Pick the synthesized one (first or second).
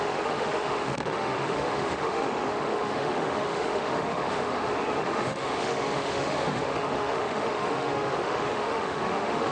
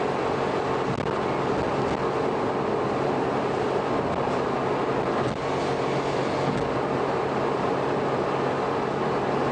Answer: first